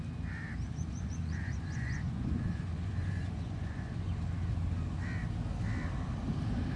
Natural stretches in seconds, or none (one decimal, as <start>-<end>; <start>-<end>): 0.0-0.7; 4.1-6.8